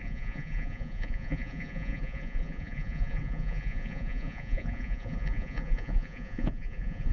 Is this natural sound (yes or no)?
no